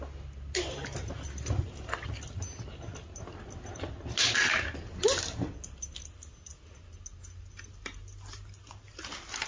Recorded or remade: recorded